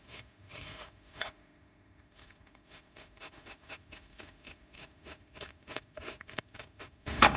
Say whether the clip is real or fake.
fake